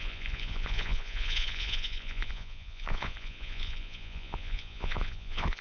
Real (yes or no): no